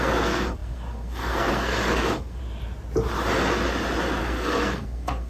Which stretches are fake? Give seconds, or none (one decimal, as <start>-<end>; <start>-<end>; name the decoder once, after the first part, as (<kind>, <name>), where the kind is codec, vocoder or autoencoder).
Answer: 0.0-2.4 (codec, SNAC); 4.2-5.3